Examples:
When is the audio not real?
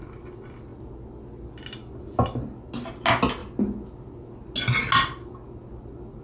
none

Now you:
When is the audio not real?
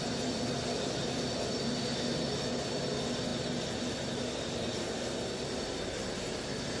none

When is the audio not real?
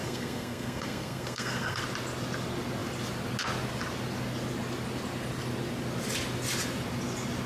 0.0-1.8 (codec, SNAC)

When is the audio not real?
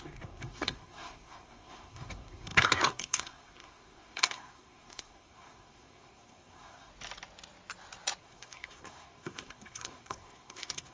0.0-6.9 (codec, SNAC); 8.2-10.9